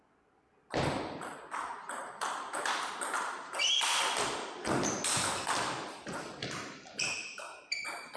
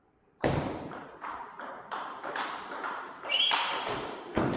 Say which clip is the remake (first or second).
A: second